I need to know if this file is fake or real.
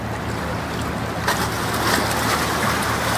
real